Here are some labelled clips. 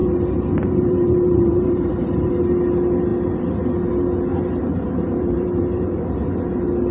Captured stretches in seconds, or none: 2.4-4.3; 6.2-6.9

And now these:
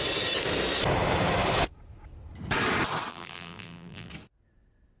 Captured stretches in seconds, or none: 0.0-3.1; 4.1-5.0

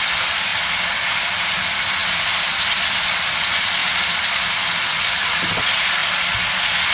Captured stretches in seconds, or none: 2.0-3.3; 3.8-5.0; 6.0-6.5

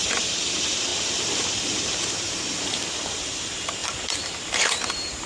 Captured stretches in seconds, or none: none

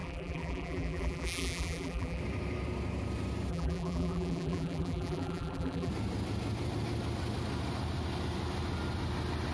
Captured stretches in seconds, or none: 2.2-3.5; 5.9-9.5

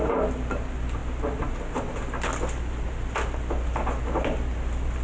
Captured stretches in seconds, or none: 0.0-5.0

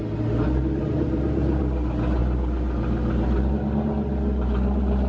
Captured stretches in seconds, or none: 0.0-0.8; 1.6-5.1

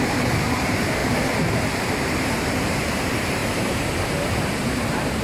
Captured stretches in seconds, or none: 1.0-2.1